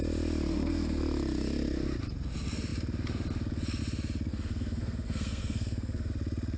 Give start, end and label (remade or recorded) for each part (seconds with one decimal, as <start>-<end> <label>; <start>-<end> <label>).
0.0-0.5 recorded; 0.5-1.0 remade; 1.0-4.3 recorded; 4.3-6.1 remade; 6.1-6.6 recorded

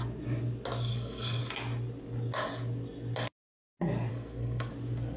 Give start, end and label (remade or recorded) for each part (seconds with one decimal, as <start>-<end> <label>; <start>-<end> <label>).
0.0-0.9 recorded; 0.9-1.4 remade; 1.4-4.1 recorded; 4.1-4.7 remade; 4.7-5.2 recorded

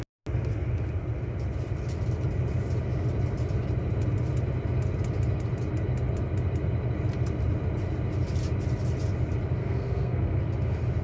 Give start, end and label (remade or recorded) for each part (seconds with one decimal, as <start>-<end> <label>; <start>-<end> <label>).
0.0-9.6 recorded; 9.6-10.4 remade; 10.4-11.0 recorded

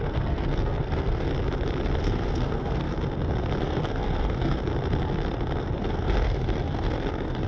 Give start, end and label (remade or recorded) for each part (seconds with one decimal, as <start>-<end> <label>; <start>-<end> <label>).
0.0-1.3 remade; 1.3-2.0 recorded; 2.0-2.9 remade; 2.9-3.6 recorded; 3.6-4.6 remade; 4.6-5.8 recorded; 5.8-7.5 remade

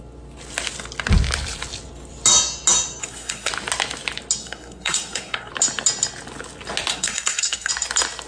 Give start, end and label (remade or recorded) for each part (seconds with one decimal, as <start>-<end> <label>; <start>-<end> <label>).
0.0-3.0 recorded; 3.0-3.5 remade; 3.5-4.4 recorded; 4.4-5.5 remade; 5.5-6.9 recorded; 6.9-7.7 remade; 7.7-8.3 recorded

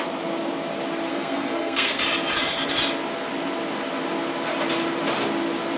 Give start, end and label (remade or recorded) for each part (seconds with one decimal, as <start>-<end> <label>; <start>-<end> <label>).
0.0-1.1 recorded; 1.1-2.0 remade; 2.0-5.8 recorded

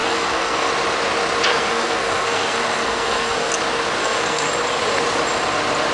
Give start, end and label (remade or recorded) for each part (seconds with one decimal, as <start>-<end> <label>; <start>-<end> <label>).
0.0-0.7 remade; 0.7-1.5 recorded; 1.5-3.5 remade; 3.5-4.0 recorded; 4.0-4.5 remade; 4.5-5.9 recorded